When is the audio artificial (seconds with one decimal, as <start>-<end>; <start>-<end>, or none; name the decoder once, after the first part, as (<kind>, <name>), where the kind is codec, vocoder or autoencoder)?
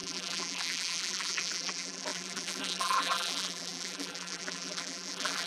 0.0-5.5 (vocoder, BigVGAN v2)